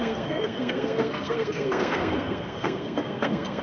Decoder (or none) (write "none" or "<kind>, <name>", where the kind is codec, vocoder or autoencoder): codec, SNAC